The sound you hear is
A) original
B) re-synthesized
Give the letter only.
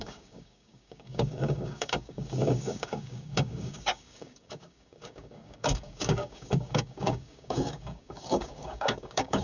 B